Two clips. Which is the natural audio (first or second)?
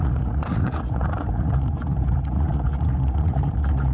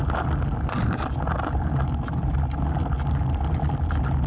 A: second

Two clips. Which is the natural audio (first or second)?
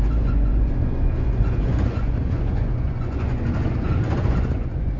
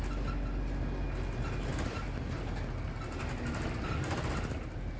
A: second